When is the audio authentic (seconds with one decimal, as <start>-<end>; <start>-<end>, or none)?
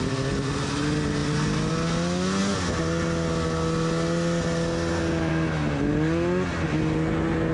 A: 0.0-7.5